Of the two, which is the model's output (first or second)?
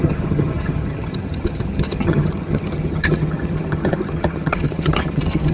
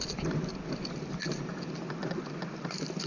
first